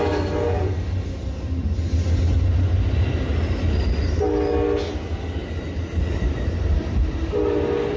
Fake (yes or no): no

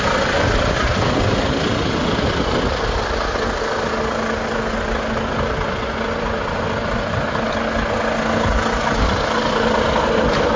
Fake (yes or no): no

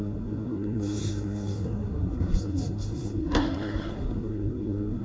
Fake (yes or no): yes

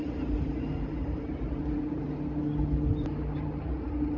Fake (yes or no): no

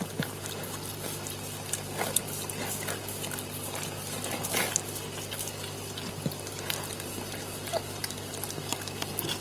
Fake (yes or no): no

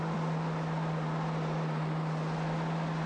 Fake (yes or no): no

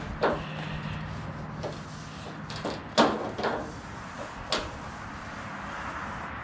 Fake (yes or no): no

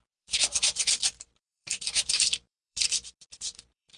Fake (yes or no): yes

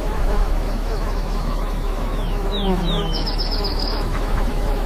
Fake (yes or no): yes